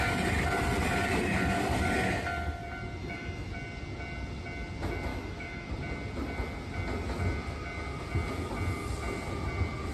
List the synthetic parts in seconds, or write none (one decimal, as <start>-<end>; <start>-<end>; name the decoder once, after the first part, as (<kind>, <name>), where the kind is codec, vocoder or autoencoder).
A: 3.0-3.5 (autoencoder, DAC-VAE); 5.1-5.7